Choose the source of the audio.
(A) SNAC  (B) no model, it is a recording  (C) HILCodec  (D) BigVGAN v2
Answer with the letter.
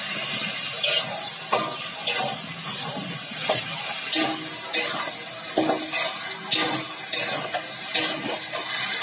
B